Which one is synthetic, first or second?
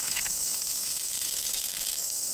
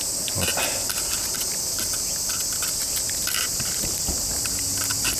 first